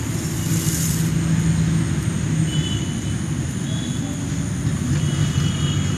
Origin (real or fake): real